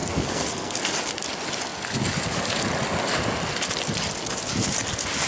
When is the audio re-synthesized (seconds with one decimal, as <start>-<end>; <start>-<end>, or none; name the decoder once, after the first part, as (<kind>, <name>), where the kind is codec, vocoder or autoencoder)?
0.0-0.8 (codec, SNAC)